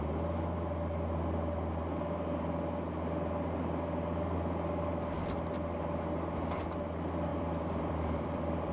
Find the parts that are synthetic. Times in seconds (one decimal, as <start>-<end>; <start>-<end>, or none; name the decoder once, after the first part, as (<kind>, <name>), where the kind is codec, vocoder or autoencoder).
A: 7.3-8.7 (vocoder, BigVGAN v2)